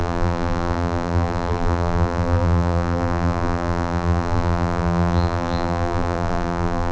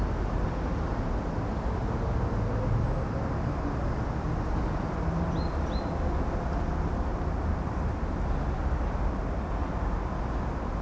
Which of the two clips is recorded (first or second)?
second